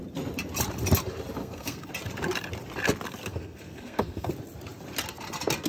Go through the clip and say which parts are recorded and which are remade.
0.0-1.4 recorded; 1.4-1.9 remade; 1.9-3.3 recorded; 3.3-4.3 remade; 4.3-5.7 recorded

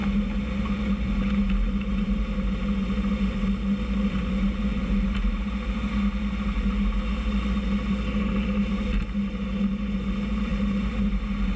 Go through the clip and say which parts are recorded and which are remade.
0.0-11.6 recorded

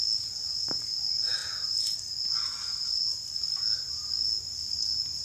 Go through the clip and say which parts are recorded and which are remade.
0.0-5.2 recorded

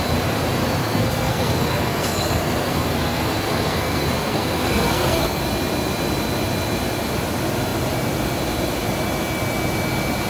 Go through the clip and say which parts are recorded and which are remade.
0.0-0.8 recorded; 0.8-5.4 remade; 5.4-10.3 recorded

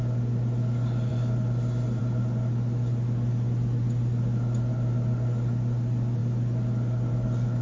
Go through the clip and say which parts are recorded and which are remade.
0.0-7.6 recorded

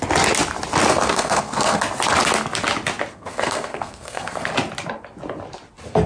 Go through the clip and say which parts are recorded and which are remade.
0.0-0.9 recorded; 0.9-1.8 remade; 1.8-3.1 recorded; 3.1-4.5 remade; 4.5-6.1 recorded

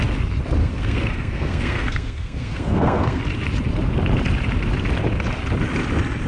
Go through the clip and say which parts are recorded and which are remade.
0.0-0.6 recorded; 0.6-3.2 remade; 3.2-6.3 recorded

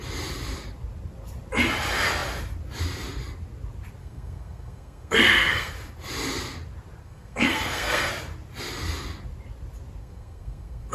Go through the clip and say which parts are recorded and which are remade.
0.0-4.0 recorded; 4.0-5.7 remade; 5.7-7.0 recorded; 7.0-8.1 remade; 8.1-10.0 recorded; 10.0-10.9 remade